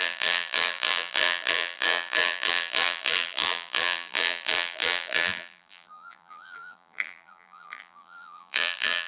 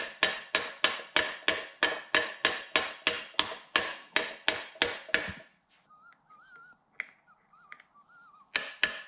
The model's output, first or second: first